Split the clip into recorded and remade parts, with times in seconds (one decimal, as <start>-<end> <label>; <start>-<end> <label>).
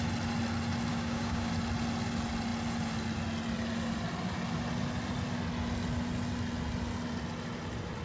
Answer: 0.0-0.9 recorded; 0.9-1.5 remade; 1.5-8.0 recorded